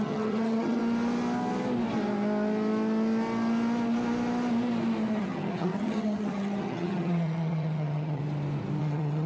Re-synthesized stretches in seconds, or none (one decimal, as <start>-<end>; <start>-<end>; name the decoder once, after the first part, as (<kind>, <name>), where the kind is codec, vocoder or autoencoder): 0.0-0.8 (vocoder, HiFi-GAN); 5.2-8.2; 8.8-9.3